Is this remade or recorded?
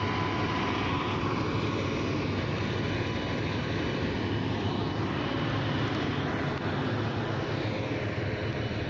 recorded